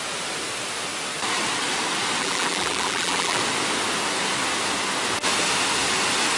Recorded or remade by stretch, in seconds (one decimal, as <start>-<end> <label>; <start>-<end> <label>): 0.0-2.2 recorded; 2.2-3.4 remade; 3.4-6.4 recorded